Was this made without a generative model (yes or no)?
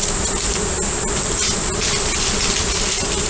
yes